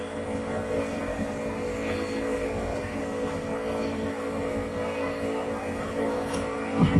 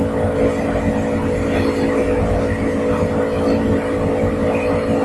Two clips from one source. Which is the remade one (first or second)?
first